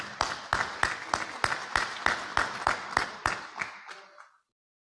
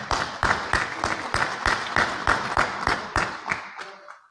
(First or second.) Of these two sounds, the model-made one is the second